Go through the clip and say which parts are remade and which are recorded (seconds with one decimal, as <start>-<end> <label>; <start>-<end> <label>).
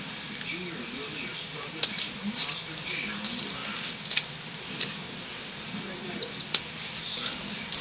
0.0-7.8 recorded